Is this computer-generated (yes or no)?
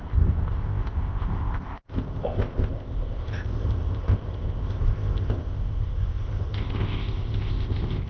yes